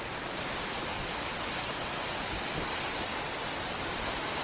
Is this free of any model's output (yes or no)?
yes